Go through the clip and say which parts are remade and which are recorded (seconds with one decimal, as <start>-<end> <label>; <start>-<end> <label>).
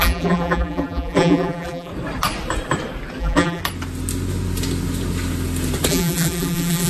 0.0-1.9 remade; 1.9-3.2 recorded; 3.2-3.6 remade; 3.6-5.9 recorded; 5.9-6.9 remade